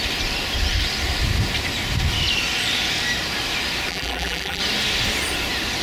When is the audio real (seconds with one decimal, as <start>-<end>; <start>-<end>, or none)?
0.0-3.9; 4.6-5.8